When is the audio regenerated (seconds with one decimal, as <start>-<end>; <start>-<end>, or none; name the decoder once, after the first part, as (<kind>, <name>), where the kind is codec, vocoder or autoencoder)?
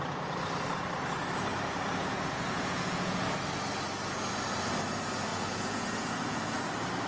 2.0-3.2 (vocoder, Vocos); 5.3-6.6